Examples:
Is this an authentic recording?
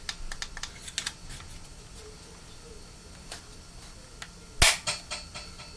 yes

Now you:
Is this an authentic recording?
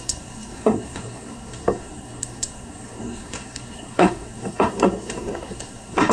no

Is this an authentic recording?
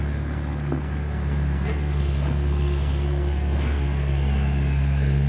no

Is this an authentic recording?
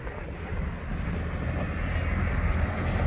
yes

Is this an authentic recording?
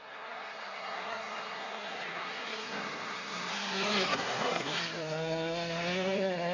no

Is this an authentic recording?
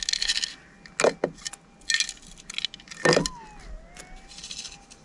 yes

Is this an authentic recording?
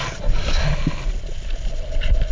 yes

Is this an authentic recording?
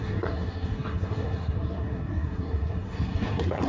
no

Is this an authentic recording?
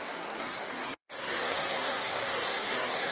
no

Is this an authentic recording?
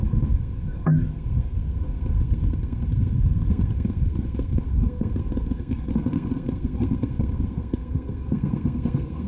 no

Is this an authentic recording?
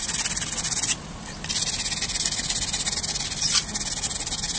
yes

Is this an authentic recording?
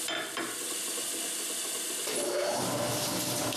yes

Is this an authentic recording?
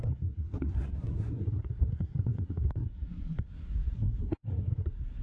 no